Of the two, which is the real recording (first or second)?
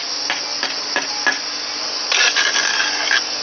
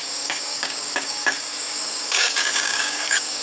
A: first